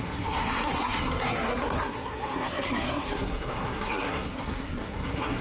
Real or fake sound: fake